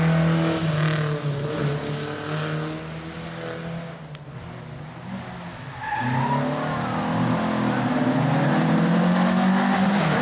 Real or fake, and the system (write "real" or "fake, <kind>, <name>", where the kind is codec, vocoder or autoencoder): real